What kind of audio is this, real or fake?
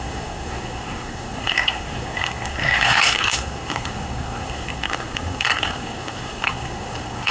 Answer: fake